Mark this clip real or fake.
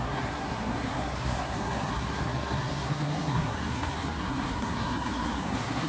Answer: fake